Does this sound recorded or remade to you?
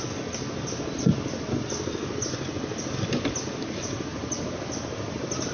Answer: recorded